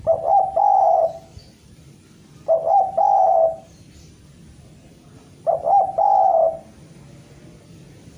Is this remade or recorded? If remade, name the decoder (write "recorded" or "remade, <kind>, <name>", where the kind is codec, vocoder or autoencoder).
recorded